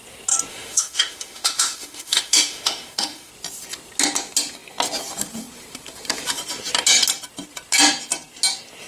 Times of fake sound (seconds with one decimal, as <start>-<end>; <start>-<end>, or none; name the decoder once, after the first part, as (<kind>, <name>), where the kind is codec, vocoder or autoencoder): 0.5-3.3 (autoencoder, DAC-VAE)